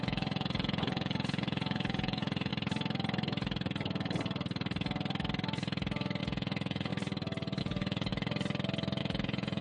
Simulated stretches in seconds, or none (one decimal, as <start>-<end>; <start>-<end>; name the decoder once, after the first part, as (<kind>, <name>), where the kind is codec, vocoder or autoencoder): 0.0-2.5 (vocoder, Vocos); 6.2-6.9; 7.6-8.1; 9.0-9.6